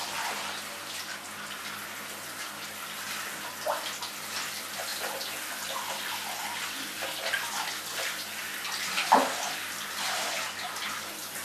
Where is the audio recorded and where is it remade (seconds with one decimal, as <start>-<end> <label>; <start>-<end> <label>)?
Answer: 0.0-11.4 recorded